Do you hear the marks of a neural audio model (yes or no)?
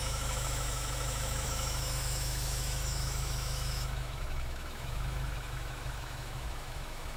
yes